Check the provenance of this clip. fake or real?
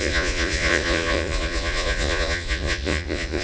fake